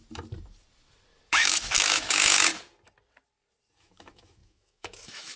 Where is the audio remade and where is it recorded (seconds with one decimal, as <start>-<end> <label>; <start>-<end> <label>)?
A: 0.0-1.3 recorded; 1.3-2.5 remade; 2.5-3.8 recorded; 3.8-5.4 remade